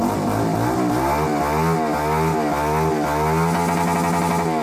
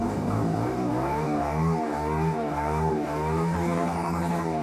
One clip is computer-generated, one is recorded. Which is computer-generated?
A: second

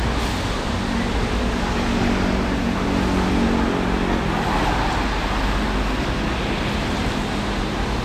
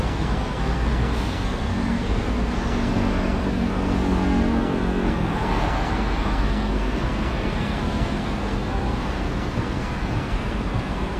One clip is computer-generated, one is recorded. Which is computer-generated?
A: second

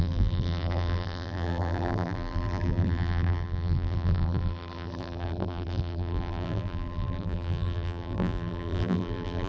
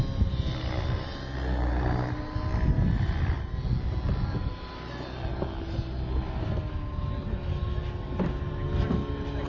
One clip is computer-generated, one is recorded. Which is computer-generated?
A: first